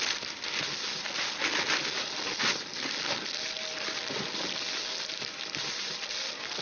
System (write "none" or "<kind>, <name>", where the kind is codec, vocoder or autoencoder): none